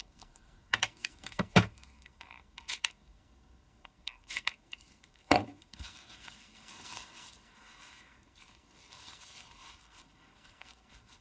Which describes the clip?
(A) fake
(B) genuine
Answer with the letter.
A